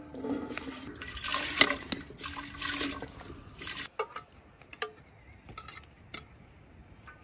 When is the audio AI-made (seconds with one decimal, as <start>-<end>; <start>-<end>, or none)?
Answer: none